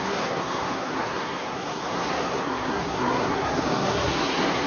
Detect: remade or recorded remade